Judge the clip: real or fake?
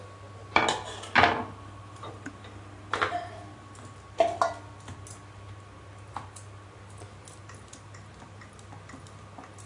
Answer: real